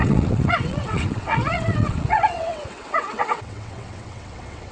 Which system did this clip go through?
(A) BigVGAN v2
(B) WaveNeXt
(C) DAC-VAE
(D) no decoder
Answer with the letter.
B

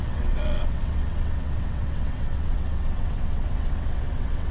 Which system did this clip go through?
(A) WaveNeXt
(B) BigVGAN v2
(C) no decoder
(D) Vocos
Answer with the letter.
A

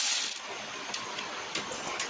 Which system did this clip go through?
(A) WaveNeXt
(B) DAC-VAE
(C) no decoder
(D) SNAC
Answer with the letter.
C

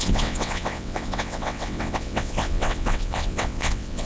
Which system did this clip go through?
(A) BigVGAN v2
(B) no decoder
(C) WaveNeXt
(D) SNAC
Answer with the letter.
C